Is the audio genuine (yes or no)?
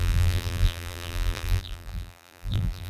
no